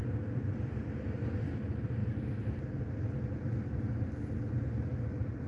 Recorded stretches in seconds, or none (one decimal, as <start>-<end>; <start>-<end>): 0.0-5.5